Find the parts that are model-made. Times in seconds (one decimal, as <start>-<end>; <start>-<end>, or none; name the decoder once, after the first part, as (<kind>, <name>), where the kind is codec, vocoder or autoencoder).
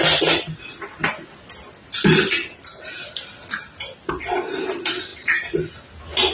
none